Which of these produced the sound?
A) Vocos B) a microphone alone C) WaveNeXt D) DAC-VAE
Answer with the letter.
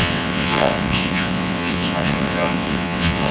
C